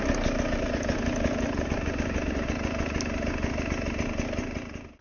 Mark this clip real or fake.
real